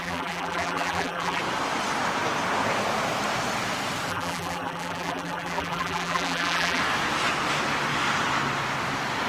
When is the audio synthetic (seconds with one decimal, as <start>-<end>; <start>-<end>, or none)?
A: 0.0-1.4; 4.1-6.8